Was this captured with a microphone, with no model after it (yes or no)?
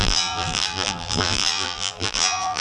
no